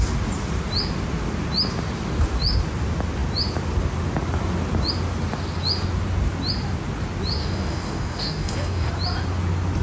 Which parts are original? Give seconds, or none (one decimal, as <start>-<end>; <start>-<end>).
0.0-7.4; 8.9-9.8